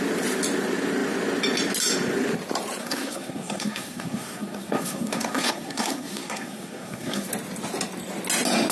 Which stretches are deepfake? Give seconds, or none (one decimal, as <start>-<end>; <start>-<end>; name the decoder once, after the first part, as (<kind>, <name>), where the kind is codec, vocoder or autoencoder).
2.8-7.3 (codec, SNAC)

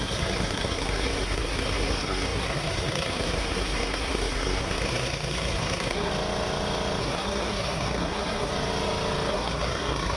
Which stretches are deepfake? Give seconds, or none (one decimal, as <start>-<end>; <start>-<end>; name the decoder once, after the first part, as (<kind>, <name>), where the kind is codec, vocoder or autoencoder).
0.0-6.1 (codec, SNAC); 7.0-8.5; 9.3-10.2

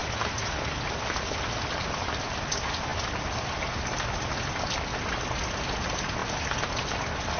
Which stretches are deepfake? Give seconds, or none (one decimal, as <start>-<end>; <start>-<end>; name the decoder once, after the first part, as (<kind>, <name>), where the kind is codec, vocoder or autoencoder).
none

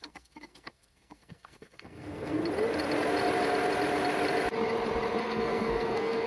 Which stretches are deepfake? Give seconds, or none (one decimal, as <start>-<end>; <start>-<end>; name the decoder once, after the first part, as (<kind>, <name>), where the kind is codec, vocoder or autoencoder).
0.0-2.4 (codec, SNAC); 5.2-6.3

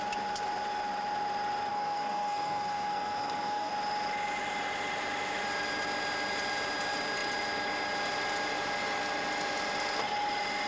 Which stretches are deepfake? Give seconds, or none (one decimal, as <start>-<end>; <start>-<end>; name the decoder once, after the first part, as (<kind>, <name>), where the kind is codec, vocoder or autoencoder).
1.7-3.7 (codec, SNAC)

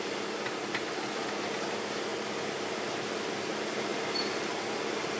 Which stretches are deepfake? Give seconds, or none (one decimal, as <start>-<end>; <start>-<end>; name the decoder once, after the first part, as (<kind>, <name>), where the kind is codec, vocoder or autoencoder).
none